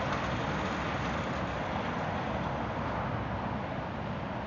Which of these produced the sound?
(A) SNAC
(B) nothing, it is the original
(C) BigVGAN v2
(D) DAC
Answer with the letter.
B